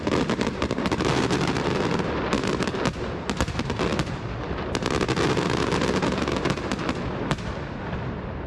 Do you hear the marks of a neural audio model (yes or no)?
no